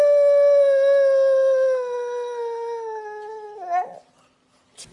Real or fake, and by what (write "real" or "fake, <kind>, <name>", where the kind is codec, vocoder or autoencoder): real